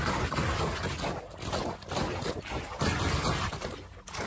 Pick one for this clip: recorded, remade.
recorded